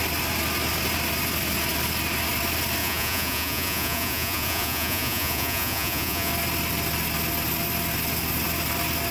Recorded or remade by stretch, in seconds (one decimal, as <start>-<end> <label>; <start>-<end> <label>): 0.0-2.8 recorded; 2.8-6.3 remade; 6.3-9.1 recorded